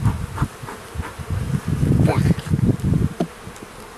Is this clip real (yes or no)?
yes